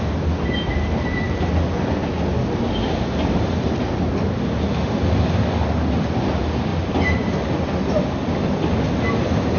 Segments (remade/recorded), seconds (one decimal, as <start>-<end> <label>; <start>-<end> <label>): 0.0-9.6 recorded